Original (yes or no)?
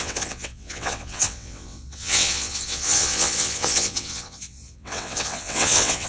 no